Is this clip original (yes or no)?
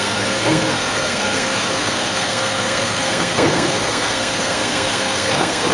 no